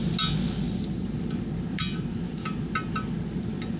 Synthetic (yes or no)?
no